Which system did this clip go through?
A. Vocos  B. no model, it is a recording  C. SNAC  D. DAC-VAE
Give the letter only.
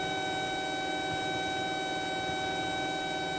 B